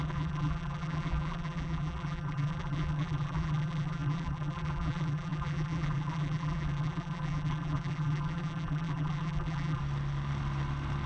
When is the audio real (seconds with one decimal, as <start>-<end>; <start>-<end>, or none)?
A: 9.8-11.1